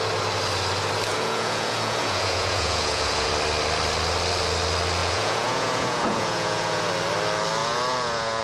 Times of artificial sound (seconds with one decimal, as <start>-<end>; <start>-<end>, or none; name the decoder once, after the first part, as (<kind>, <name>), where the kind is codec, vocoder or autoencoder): 1.1-3.3 (vocoder, Vocos); 5.0-6.9; 7.6-8.4